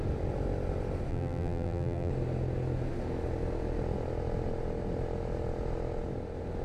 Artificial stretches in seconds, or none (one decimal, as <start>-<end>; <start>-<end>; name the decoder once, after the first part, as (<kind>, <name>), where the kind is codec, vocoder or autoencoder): 1.1-2.1 (vocoder, BigVGAN v2)